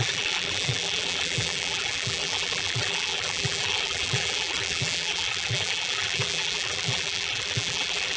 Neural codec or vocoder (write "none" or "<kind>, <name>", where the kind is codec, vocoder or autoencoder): vocoder, BigVGAN v2